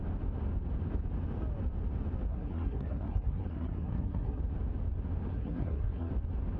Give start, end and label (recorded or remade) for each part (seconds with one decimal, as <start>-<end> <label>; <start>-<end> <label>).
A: 0.0-2.3 recorded; 2.3-4.4 remade; 4.4-5.3 recorded; 5.3-6.1 remade; 6.1-6.6 recorded